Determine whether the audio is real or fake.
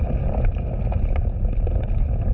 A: real